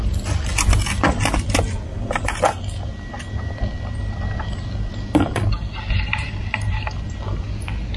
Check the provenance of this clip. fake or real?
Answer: real